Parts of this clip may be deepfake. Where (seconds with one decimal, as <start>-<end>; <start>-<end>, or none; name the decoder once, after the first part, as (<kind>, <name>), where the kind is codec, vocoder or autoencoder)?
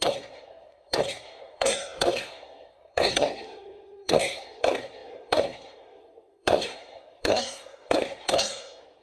0.0-9.0 (codec, SNAC)